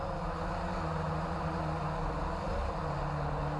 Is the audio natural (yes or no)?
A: yes